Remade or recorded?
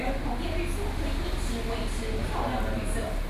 recorded